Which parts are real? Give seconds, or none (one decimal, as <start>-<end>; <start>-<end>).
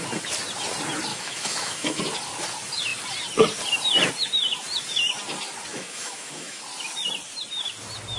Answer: 0.0-1.1; 2.0-5.7; 6.6-8.2